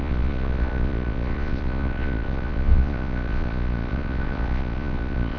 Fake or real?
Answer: fake